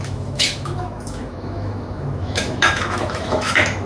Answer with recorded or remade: remade